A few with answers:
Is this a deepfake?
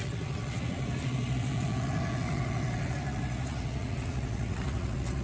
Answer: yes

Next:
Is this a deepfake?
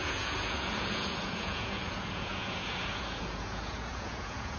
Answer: yes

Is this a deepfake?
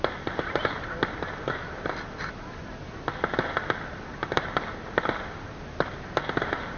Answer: no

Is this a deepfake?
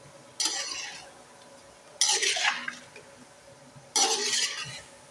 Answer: no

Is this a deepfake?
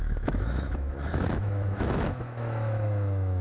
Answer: yes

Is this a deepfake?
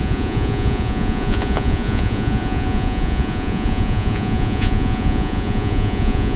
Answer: yes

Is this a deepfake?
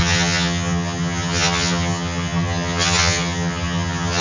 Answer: yes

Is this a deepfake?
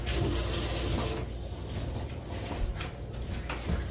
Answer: no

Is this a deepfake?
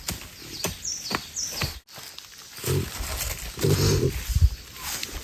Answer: no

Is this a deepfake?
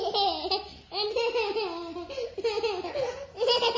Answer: no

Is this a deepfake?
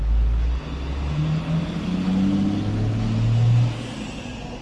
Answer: no